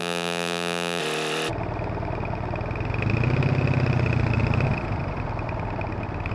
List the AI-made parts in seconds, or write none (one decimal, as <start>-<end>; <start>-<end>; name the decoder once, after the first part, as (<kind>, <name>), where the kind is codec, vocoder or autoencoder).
0.0-1.0 (vocoder, BigVGAN v2)